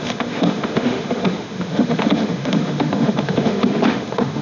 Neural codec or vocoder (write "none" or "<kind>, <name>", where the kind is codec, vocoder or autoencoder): autoencoder, DAC-VAE